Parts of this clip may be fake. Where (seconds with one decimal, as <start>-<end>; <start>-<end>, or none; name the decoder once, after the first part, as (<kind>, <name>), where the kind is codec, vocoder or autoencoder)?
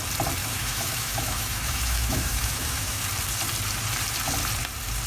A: 0.4-3.0 (autoencoder, DAC-VAE)